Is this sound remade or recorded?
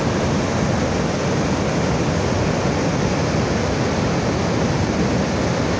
recorded